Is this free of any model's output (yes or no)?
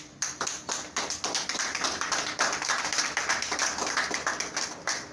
yes